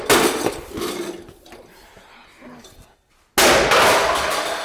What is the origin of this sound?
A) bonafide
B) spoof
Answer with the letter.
A